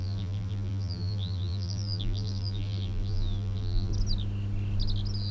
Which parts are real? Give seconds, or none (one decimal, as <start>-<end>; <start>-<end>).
3.9-5.3